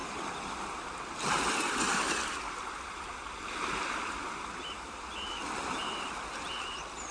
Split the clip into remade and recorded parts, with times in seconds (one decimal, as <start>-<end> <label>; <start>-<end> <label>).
0.0-7.1 recorded